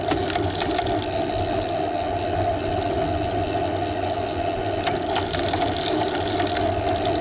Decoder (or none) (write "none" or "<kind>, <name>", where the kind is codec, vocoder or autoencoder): none